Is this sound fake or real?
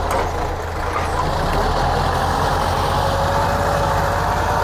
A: real